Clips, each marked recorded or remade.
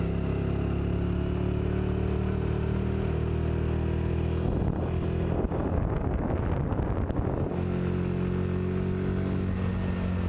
recorded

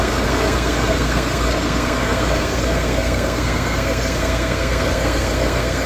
remade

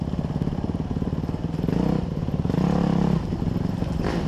recorded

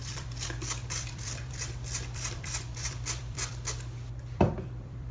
remade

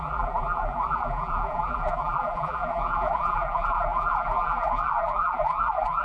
remade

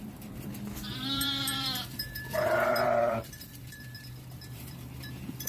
remade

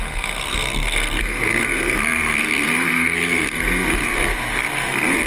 remade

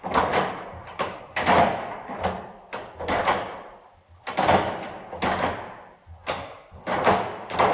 recorded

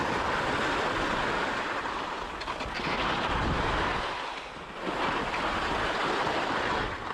recorded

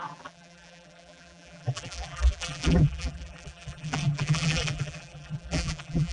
remade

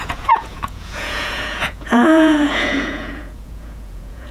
remade